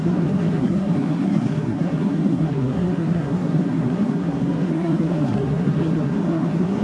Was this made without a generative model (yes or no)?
no